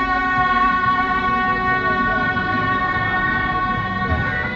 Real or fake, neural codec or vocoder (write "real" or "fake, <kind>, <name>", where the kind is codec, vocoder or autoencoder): real